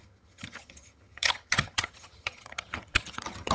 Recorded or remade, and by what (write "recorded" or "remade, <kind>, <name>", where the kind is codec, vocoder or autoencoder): remade, vocoder, HiFi-GAN